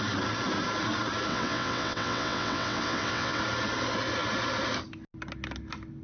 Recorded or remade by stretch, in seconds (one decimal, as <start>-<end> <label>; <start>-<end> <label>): 0.0-1.3 recorded; 1.3-3.4 remade; 3.4-6.0 recorded